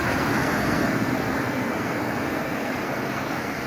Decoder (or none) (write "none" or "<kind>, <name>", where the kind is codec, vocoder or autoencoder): codec, SNAC